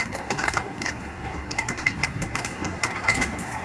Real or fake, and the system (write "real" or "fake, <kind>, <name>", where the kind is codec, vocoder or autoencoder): fake, codec, SNAC